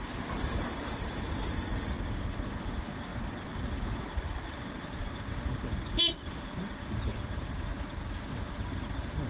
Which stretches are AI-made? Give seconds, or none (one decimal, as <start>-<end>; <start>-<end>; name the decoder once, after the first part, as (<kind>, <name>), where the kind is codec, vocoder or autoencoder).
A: 0.0-1.7 (vocoder, BigVGAN v2); 2.3-9.3